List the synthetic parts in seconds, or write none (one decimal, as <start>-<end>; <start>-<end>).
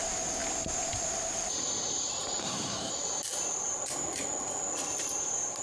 2.4-2.9